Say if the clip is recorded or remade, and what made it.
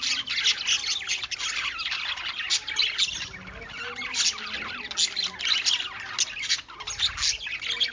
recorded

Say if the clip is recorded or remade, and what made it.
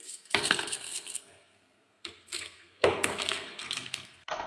remade, codec, SNAC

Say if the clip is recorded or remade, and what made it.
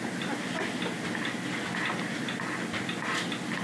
recorded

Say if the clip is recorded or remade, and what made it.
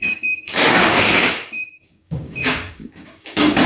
remade, codec, DAC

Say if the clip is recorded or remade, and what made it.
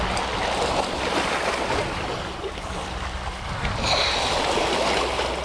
recorded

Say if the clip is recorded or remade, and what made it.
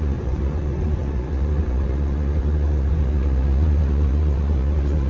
remade, vocoder, Vocos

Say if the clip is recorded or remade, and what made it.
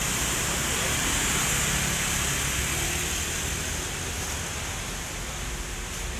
recorded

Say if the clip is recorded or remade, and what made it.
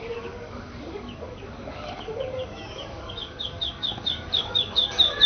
remade, codec, DAC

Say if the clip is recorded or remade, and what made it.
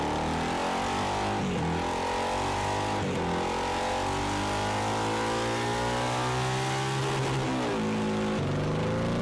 recorded